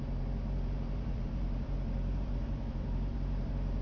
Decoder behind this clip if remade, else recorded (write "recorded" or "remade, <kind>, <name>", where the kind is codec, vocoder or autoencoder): remade, vocoder, BigVGAN v2